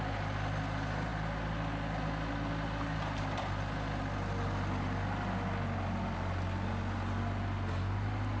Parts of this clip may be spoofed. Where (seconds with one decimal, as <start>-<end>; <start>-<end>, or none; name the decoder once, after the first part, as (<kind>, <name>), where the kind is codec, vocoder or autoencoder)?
none